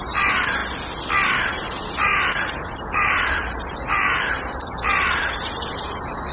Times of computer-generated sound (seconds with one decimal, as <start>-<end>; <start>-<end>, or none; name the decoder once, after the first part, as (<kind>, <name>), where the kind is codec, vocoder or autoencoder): 0.0-0.6 (vocoder, BigVGAN v2); 1.4-6.3